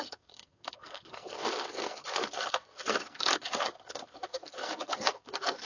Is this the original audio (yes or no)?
no